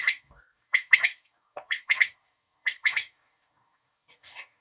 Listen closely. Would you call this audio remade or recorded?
remade